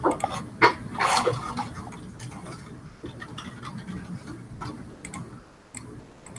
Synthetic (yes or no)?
no